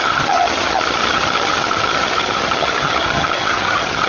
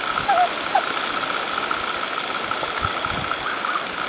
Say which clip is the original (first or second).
second